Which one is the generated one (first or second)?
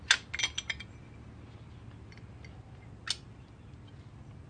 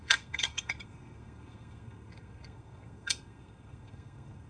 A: second